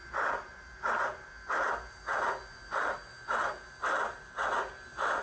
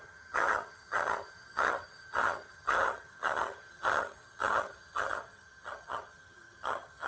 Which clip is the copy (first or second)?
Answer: second